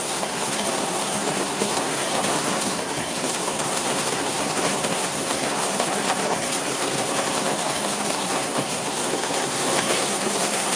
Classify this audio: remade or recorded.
remade